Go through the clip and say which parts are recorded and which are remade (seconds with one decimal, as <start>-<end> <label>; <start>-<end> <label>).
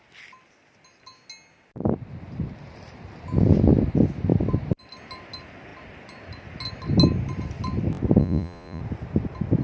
0.0-8.2 recorded; 8.2-8.8 remade; 8.8-9.6 recorded